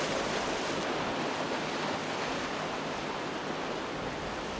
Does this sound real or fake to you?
real